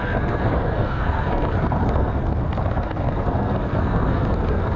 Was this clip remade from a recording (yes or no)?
yes